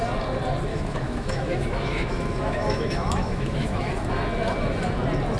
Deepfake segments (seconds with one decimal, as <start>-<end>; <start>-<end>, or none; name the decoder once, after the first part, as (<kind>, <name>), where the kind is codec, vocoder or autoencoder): 0.7-3.9 (autoencoder, DAC-VAE)